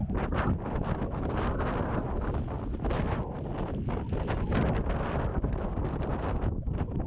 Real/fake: real